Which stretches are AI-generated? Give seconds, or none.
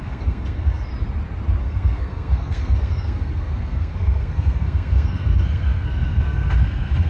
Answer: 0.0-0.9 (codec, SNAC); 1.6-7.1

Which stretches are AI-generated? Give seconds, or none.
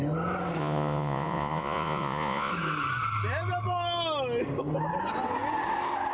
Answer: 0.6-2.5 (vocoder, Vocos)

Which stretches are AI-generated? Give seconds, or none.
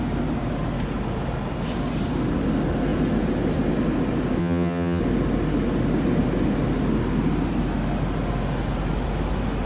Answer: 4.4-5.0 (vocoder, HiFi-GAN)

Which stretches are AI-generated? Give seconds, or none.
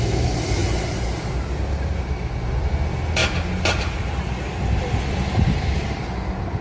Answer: none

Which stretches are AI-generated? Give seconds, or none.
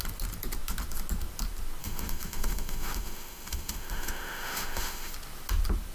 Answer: 1.8-5.1 (autoencoder, DAC-VAE)